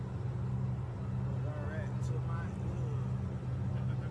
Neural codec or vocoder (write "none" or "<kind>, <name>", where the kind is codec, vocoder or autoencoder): none